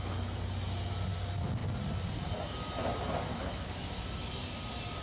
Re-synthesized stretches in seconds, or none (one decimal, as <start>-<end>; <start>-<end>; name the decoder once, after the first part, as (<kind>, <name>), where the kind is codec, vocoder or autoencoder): 3.3-4.0 (autoencoder, DAC-VAE)